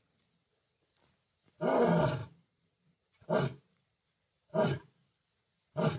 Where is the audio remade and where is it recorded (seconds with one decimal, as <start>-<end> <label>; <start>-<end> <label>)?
0.0-2.2 recorded; 2.2-4.5 remade; 4.5-6.0 recorded